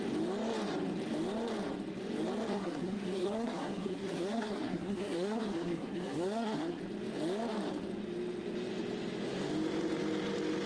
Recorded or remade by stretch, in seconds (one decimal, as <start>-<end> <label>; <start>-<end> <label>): 0.0-2.5 recorded; 2.5-6.8 remade; 6.8-10.7 recorded